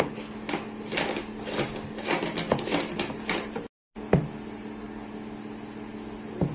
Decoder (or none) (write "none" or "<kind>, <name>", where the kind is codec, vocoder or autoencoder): none